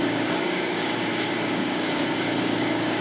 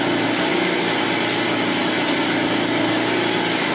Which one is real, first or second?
second